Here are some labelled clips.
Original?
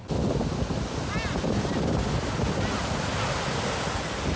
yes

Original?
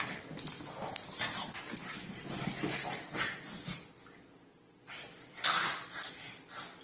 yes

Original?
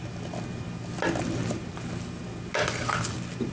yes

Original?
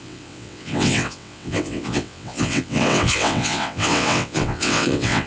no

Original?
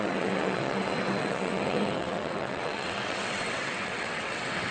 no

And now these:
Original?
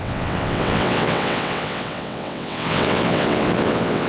no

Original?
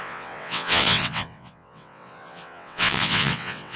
no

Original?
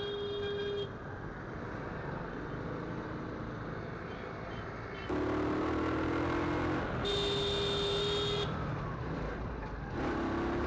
yes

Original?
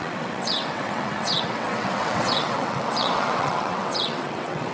no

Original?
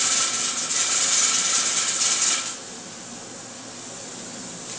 yes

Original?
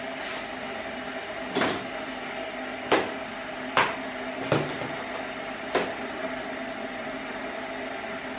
yes